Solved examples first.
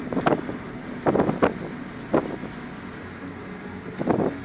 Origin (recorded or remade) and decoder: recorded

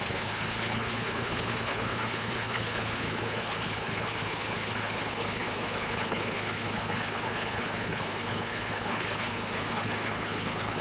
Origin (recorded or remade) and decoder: remade, codec, HILCodec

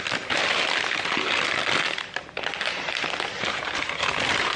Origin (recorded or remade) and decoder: recorded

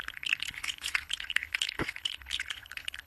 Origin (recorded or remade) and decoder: remade, codec, HILCodec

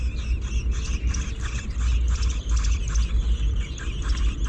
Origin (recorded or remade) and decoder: recorded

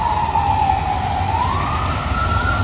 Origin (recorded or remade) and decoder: recorded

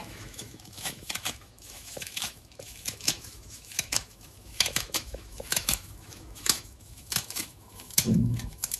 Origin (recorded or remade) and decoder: remade, autoencoder, DAC-VAE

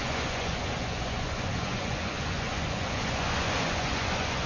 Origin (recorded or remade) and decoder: remade, vocoder, Vocos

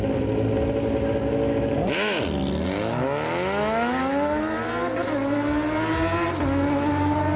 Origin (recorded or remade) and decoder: recorded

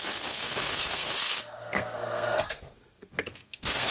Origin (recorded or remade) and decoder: remade, codec, SNAC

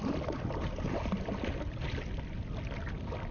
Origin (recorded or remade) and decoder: recorded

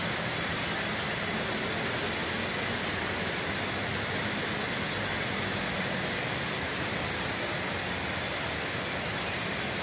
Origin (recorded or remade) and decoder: recorded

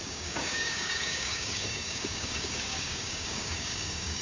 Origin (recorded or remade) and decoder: remade, codec, DAC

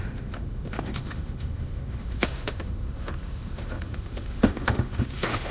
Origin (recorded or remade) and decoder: remade, autoencoder, DAC-VAE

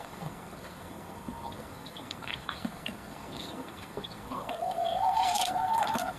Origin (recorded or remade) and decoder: remade, codec, SNAC